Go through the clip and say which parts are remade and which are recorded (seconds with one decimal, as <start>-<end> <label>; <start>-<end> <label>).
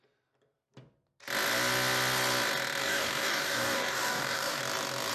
0.0-2.8 recorded; 2.8-4.6 remade; 4.6-5.1 recorded